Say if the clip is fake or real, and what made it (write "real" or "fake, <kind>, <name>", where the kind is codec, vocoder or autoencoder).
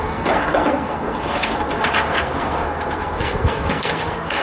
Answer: fake, codec, SNAC